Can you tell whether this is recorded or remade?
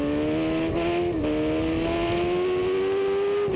recorded